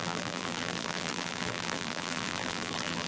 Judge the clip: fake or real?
fake